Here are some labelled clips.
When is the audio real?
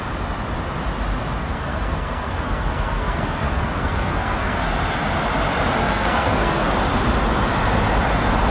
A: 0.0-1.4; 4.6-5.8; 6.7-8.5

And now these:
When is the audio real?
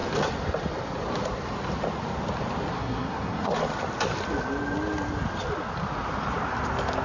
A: 0.0-2.7; 3.5-7.0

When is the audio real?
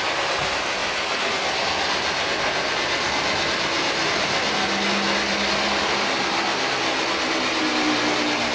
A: 0.0-8.5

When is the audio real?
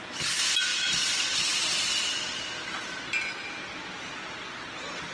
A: 0.0-5.1